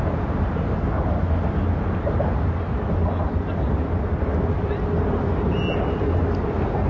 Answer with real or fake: real